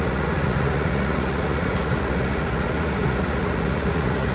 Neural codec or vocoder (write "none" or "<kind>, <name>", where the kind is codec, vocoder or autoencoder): vocoder, Vocos